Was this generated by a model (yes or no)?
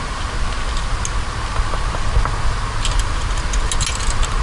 no